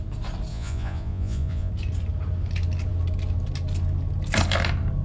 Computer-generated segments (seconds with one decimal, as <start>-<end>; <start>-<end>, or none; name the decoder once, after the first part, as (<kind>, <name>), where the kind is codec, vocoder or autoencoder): 0.5-1.7 (vocoder, Vocos)